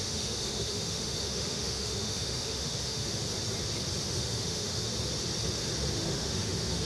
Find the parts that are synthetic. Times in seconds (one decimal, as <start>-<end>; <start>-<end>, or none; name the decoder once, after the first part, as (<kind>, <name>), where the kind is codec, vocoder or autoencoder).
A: 0.0-3.2 (autoencoder, DAC-VAE); 4.0-4.9; 5.9-6.8